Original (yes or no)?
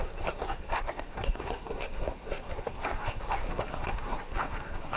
no